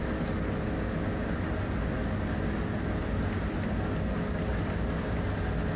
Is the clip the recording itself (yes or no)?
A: yes